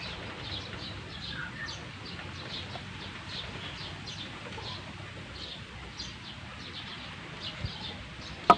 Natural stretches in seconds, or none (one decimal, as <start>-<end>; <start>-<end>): 0.0-8.6